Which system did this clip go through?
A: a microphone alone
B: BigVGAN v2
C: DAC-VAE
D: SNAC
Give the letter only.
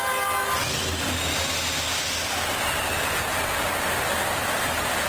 A